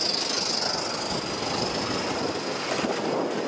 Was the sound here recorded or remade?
recorded